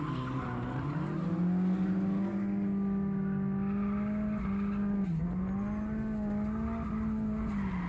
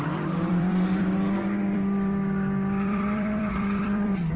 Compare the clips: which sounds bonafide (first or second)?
first